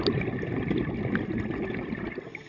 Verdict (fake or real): real